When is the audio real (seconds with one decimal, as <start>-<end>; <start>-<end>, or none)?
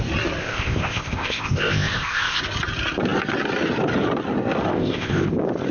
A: 0.0-0.4; 2.4-4.7; 5.3-5.7